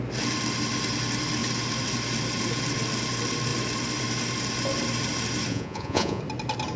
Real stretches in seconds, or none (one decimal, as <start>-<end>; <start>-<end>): 0.0-5.5; 6.2-6.8